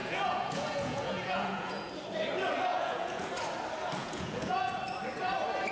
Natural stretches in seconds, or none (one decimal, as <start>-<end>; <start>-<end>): 1.9-2.7; 3.3-4.0; 4.8-5.7